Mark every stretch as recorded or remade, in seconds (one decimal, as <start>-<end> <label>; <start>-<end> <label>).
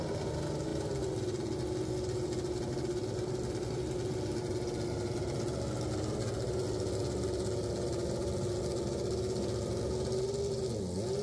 0.0-11.2 recorded